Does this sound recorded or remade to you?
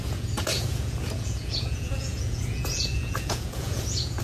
remade